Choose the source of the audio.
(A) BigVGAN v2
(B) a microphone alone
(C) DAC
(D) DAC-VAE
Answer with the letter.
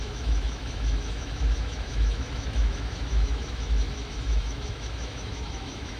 D